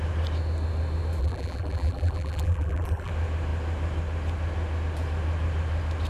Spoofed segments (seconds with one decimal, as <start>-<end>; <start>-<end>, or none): 1.2-3.1